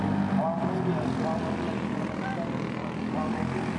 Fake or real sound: real